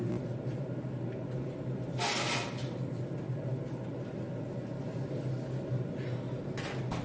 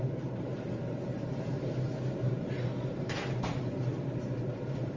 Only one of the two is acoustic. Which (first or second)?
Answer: first